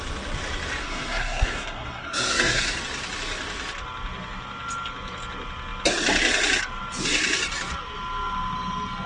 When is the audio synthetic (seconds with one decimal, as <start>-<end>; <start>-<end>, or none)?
0.8-2.8